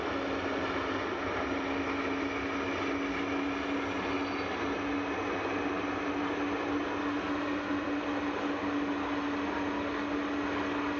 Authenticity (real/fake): real